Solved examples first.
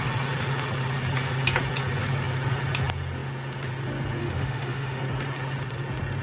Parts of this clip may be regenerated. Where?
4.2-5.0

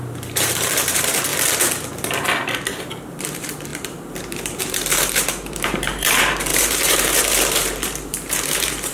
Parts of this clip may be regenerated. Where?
0.0-1.3; 3.1-8.9

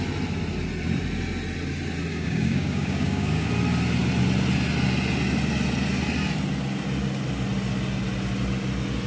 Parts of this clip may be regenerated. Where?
2.1-3.5

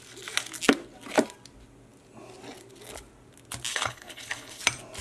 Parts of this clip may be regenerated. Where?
3.7-4.6